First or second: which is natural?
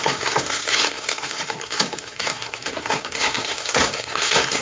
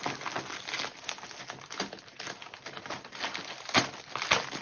second